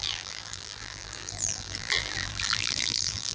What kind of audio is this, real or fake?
fake